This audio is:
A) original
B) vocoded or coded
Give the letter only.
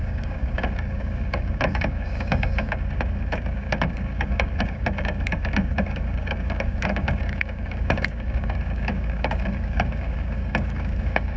B